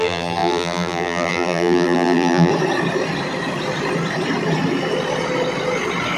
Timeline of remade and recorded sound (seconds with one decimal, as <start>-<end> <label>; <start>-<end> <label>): 0.0-2.5 remade; 2.5-6.2 recorded